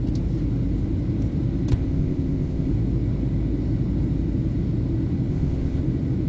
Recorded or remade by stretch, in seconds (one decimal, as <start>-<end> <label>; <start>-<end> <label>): 0.0-1.7 recorded; 1.7-2.7 remade; 2.7-5.3 recorded; 5.3-5.8 remade; 5.8-6.3 recorded